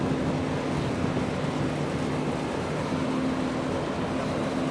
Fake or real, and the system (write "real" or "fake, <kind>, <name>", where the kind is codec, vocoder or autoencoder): real